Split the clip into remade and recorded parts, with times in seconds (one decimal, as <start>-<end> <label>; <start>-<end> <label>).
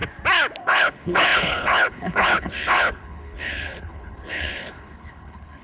0.0-0.6 recorded; 0.6-5.6 remade